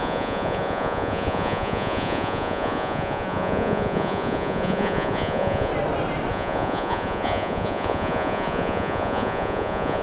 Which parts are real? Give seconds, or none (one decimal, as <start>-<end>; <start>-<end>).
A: 5.7-6.3